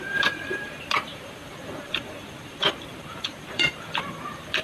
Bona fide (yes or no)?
no